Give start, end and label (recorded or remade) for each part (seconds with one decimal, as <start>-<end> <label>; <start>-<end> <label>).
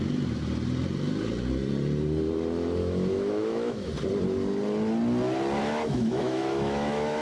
0.0-2.8 recorded; 2.8-3.9 remade; 3.9-5.6 recorded; 5.6-7.2 remade